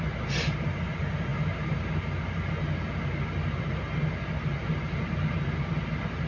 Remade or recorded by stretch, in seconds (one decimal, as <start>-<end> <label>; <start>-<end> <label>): 0.0-6.3 recorded